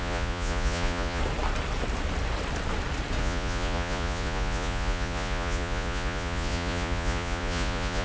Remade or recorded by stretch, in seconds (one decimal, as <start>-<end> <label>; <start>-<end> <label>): 0.0-1.2 remade; 1.2-3.2 recorded; 3.2-8.0 remade